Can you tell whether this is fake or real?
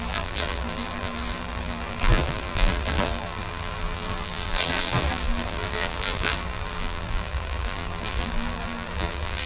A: fake